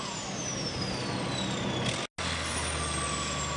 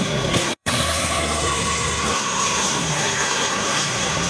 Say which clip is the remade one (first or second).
second